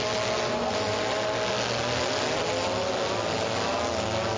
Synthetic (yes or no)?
no